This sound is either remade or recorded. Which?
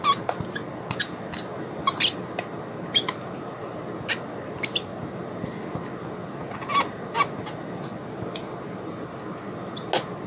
recorded